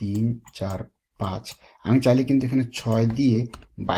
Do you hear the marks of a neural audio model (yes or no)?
yes